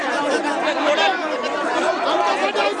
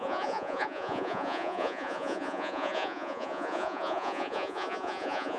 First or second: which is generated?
second